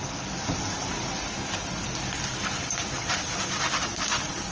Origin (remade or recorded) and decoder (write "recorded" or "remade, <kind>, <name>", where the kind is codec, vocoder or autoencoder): recorded